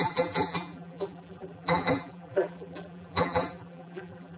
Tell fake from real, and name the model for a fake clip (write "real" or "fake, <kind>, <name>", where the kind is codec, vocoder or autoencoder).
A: fake, vocoder, BigVGAN v2